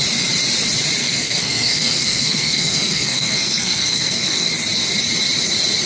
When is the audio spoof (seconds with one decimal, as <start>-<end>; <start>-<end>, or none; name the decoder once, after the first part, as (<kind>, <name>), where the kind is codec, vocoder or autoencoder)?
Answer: 1.0-4.5 (codec, SNAC)